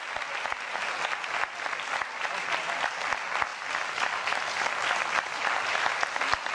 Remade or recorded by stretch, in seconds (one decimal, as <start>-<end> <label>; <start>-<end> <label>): 0.0-6.5 recorded